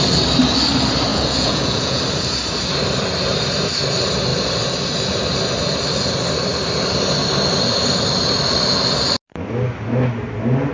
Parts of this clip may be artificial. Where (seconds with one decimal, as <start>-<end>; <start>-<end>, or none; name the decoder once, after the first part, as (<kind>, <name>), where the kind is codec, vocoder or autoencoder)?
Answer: 1.1-2.0 (vocoder, Vocos)